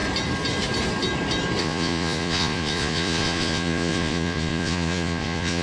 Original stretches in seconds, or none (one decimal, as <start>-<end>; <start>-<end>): 0.0-1.6